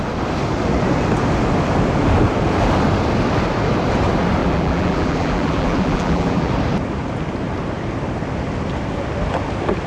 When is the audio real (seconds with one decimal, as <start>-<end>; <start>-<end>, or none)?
0.0-4.4; 6.5-9.9